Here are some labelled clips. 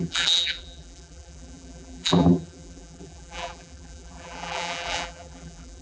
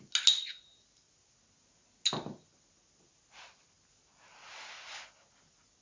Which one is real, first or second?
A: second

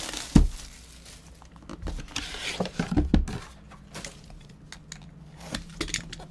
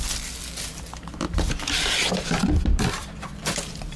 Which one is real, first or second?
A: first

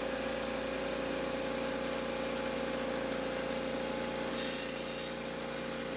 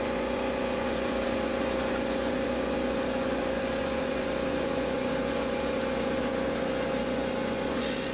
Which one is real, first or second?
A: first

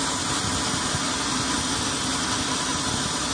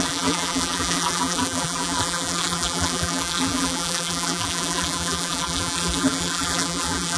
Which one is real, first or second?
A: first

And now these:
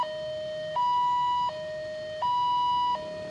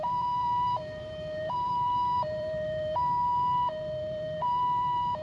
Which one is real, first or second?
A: first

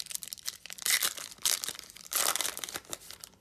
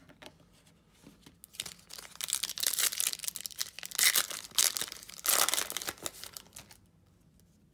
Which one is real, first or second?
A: second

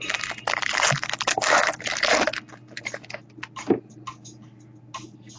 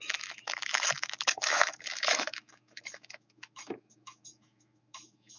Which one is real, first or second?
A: first